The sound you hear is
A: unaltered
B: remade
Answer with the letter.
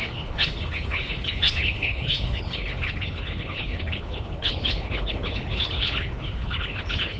B